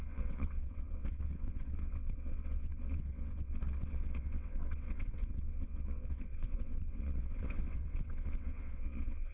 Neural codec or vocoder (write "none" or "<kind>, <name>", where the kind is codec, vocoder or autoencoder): vocoder, WaveNeXt